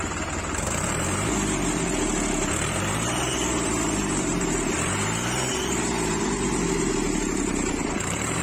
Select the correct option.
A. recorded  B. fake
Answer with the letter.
B